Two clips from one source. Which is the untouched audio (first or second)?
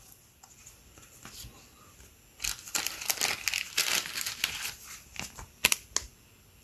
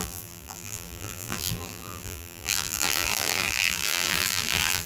first